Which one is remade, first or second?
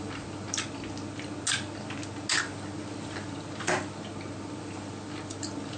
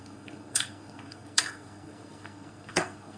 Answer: second